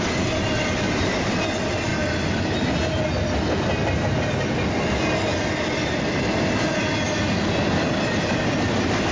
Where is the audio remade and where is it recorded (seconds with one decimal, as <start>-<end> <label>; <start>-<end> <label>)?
0.0-9.1 recorded

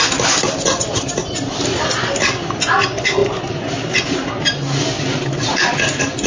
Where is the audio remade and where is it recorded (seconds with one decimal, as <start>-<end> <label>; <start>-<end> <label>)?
0.0-6.3 recorded

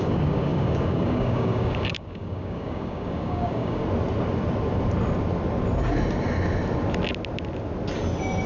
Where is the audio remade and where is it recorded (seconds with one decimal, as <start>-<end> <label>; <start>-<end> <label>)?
0.0-3.8 remade; 3.8-8.5 recorded

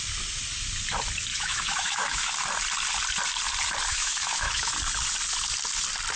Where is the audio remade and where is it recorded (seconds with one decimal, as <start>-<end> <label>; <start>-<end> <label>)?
0.0-1.3 recorded; 1.3-2.3 remade; 2.3-3.9 recorded; 3.9-4.7 remade; 4.7-6.2 recorded

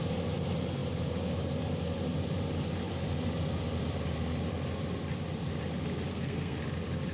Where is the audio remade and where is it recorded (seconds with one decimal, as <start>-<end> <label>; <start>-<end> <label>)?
0.0-6.1 recorded; 6.1-6.6 remade; 6.6-7.1 recorded

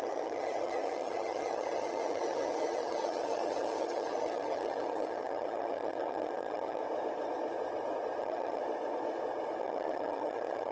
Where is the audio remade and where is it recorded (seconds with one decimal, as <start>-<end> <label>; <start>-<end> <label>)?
0.0-6.8 remade; 6.8-8.2 recorded; 8.2-8.6 remade; 8.6-9.6 recorded; 9.6-10.7 remade

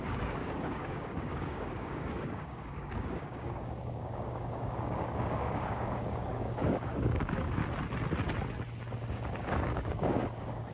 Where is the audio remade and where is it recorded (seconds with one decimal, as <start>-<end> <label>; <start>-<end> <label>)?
0.0-7.6 remade; 7.6-9.1 recorded; 9.1-10.7 remade

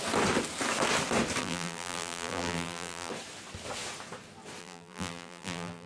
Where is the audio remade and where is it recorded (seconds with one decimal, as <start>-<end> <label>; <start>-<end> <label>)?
0.0-1.4 recorded; 1.4-3.1 remade; 3.1-4.6 recorded; 4.6-5.9 remade